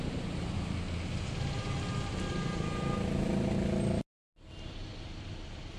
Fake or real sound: real